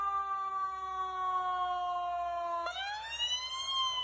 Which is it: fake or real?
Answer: real